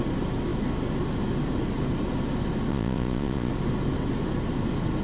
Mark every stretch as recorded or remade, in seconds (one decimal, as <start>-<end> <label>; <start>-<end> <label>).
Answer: 0.0-2.7 recorded; 2.7-3.5 remade; 3.5-5.0 recorded